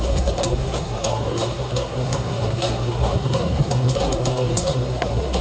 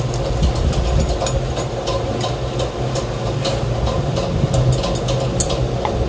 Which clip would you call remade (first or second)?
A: first